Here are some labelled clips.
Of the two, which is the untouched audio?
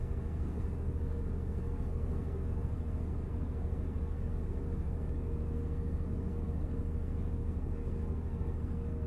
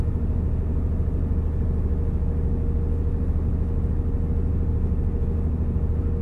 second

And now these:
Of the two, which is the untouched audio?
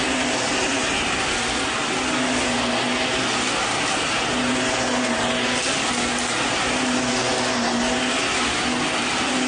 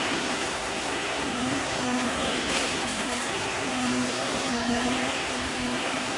first